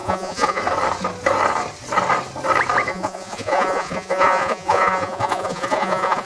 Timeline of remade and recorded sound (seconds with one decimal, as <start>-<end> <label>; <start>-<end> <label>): 0.0-0.6 remade; 0.6-2.9 recorded; 2.9-6.3 remade